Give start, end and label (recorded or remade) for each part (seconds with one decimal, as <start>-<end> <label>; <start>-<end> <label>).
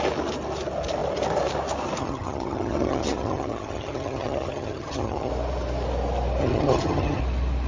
0.0-2.0 recorded; 2.0-5.3 remade; 5.3-6.4 recorded; 6.4-7.2 remade; 7.2-7.7 recorded